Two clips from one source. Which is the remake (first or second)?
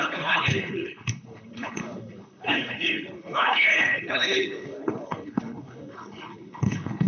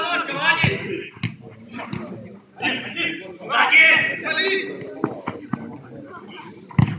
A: first